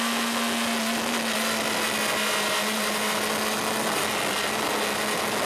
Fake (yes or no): no